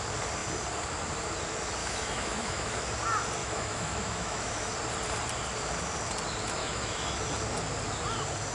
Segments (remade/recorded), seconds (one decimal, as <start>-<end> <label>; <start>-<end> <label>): 0.0-1.8 recorded; 1.8-2.8 remade; 2.8-3.4 recorded; 3.4-4.7 remade; 4.7-6.6 recorded; 6.6-7.2 remade; 7.2-8.5 recorded